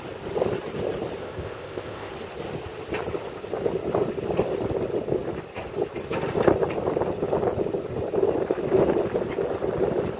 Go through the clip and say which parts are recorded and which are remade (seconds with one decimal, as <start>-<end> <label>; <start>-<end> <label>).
0.0-1.2 recorded; 1.2-2.1 remade; 2.1-10.2 recorded